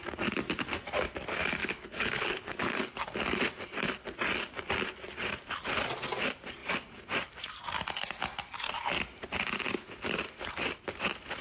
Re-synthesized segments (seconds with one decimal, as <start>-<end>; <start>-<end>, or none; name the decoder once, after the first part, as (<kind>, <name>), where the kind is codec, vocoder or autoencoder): 1.6-2.9 (codec, HILCodec)